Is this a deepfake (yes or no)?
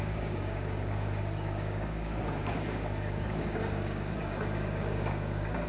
yes